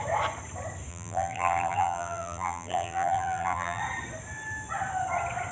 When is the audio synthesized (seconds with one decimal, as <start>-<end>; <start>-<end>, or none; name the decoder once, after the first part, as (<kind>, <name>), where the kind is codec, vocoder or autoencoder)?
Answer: 0.9-3.8 (vocoder, BigVGAN v2)